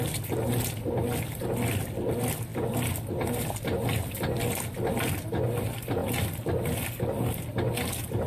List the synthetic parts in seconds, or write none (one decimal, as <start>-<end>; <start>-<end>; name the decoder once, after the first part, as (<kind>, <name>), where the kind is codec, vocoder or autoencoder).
none